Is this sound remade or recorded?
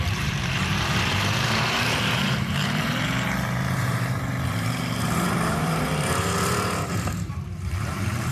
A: remade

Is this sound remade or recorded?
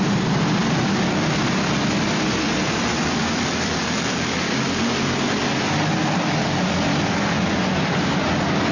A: recorded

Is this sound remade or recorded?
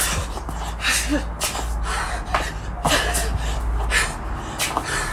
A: recorded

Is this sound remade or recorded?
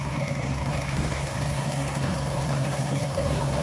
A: remade